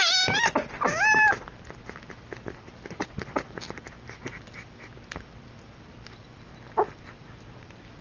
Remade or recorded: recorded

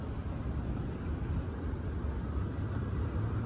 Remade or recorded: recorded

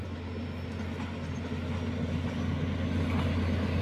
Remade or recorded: recorded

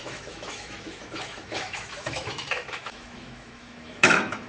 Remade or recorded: remade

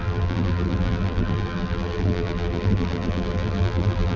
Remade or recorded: remade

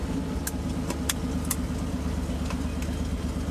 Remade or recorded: recorded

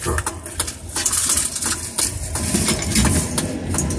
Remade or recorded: recorded